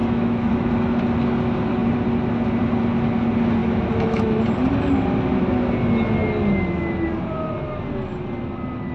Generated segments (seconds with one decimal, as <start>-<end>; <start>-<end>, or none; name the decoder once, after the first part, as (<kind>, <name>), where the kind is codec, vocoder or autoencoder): 0.0-0.7 (autoencoder, DAC-VAE); 3.6-4.4